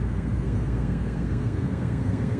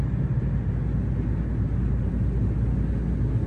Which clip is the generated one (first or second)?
first